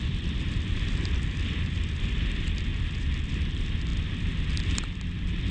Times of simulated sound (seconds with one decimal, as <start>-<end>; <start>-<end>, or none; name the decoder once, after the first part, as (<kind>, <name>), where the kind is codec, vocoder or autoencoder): 0.0-5.5 (vocoder, BigVGAN v2)